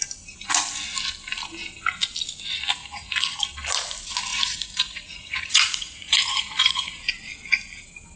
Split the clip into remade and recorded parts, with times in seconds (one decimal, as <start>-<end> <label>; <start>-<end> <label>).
0.0-2.8 recorded; 2.8-3.4 remade; 3.4-4.3 recorded; 4.3-6.9 remade; 6.9-8.2 recorded